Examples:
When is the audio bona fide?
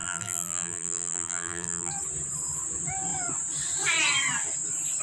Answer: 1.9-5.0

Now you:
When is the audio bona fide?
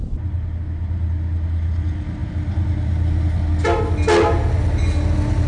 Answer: 0.0-5.5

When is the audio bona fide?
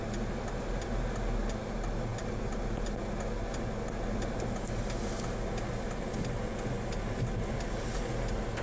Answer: 0.0-8.6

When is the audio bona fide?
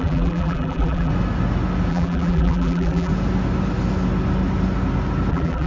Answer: 1.1-1.9; 3.1-5.3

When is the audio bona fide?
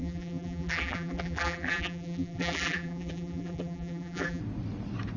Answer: 4.4-5.2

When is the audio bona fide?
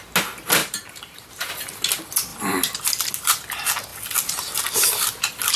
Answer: 0.0-0.6; 1.5-5.6